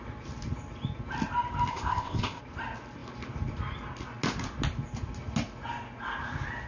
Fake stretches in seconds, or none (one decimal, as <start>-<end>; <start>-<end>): 1.7-2.4